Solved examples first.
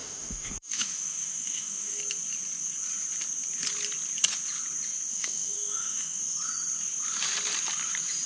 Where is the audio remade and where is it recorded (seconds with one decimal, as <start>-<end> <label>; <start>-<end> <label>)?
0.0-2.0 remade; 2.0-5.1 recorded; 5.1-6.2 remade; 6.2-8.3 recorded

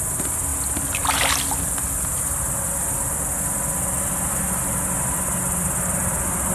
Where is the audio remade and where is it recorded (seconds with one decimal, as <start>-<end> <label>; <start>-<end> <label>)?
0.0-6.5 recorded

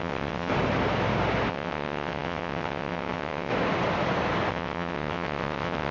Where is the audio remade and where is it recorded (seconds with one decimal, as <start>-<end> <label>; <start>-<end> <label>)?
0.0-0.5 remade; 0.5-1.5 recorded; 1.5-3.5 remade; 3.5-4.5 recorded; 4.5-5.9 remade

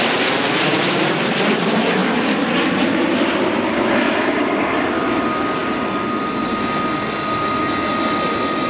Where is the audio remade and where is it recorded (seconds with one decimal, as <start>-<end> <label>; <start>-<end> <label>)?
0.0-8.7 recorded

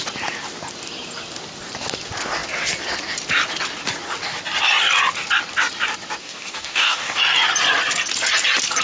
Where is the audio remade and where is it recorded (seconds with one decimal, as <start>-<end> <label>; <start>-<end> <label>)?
0.0-6.2 recorded; 6.2-7.2 remade; 7.2-8.8 recorded

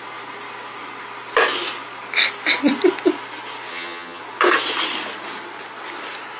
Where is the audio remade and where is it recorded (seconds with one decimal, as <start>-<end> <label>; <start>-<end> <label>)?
0.0-3.7 recorded; 3.7-4.2 remade; 4.2-6.4 recorded

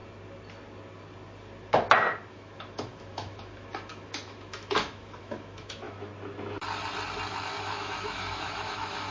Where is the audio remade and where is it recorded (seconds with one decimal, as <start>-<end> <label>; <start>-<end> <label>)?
0.0-2.3 recorded; 2.3-6.1 remade; 6.1-7.6 recorded; 7.6-9.1 remade

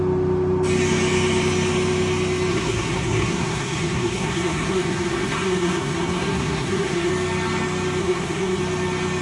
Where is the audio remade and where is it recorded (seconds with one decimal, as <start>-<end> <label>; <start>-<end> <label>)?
0.0-2.5 recorded; 2.5-7.1 remade; 7.1-8.0 recorded; 8.0-8.6 remade; 8.6-9.2 recorded